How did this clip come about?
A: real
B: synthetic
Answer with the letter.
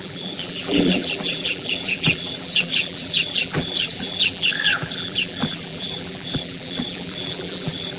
B